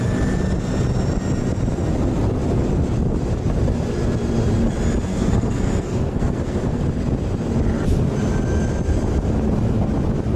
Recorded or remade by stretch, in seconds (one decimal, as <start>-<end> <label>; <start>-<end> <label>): 0.0-5.1 recorded; 5.1-6.8 remade; 6.8-10.4 recorded